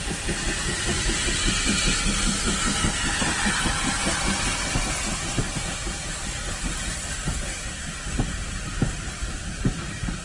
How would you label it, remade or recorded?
recorded